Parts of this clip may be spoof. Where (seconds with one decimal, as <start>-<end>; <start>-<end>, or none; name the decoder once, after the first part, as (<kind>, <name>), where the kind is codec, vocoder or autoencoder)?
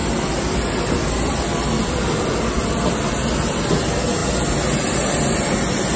0.0-3.6 (vocoder, BigVGAN v2)